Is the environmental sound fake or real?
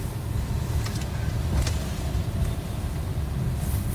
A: real